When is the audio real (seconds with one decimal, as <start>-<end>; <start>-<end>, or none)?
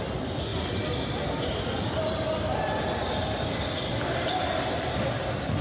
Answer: 0.0-5.6